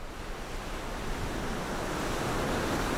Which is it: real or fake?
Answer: real